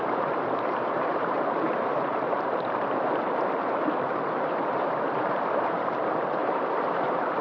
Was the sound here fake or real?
fake